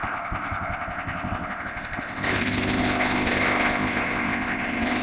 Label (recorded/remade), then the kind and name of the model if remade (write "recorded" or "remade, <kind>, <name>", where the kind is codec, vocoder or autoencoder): remade, codec, ZipCodec